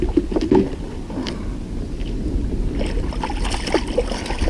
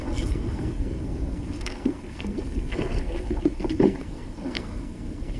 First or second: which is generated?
second